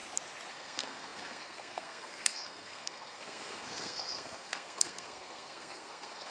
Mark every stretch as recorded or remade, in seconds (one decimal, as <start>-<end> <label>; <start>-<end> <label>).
0.0-0.5 recorded; 0.5-6.3 remade